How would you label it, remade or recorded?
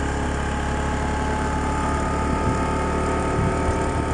recorded